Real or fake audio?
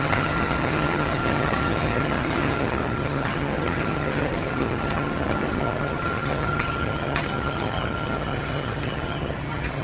fake